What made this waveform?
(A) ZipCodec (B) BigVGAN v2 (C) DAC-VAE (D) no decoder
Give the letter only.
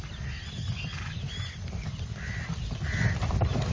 D